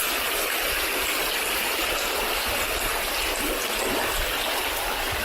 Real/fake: real